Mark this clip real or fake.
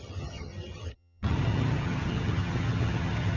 fake